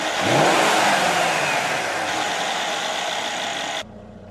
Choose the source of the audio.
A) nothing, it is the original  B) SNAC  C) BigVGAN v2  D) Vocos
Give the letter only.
A